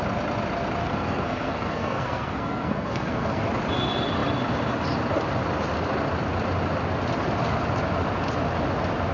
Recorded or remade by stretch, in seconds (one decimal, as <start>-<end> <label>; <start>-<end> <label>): 0.0-0.8 recorded; 0.8-3.4 remade; 3.4-9.1 recorded